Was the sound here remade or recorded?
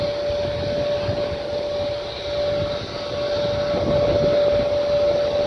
recorded